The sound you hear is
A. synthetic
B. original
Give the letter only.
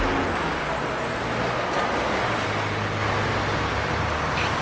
B